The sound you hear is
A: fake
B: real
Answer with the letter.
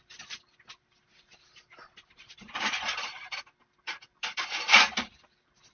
A